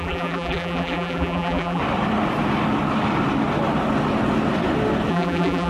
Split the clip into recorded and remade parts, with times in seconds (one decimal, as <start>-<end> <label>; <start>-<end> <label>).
0.0-1.8 remade; 1.8-5.1 recorded; 5.1-5.7 remade